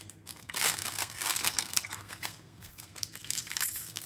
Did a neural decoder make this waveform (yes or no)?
yes